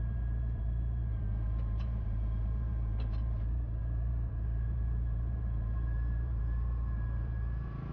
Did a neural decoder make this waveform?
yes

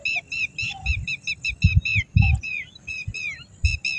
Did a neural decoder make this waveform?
no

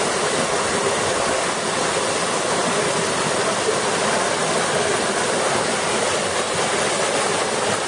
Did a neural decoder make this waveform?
no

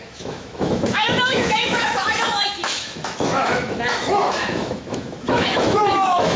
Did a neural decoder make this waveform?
yes